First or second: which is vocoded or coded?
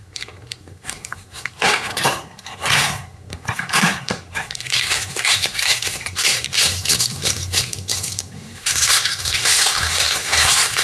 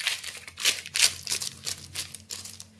first